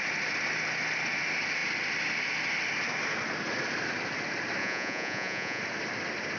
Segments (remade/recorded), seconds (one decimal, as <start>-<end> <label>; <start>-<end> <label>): 0.0-4.6 recorded; 4.6-5.6 remade; 5.6-6.4 recorded